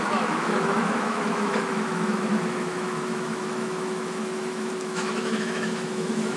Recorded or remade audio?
remade